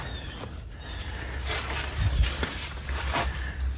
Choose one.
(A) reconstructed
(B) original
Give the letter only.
B